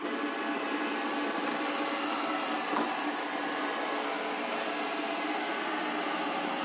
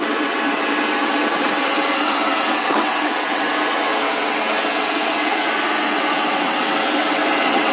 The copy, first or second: second